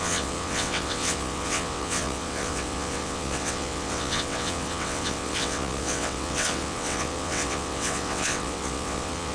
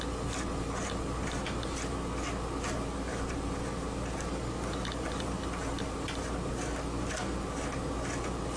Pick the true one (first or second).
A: second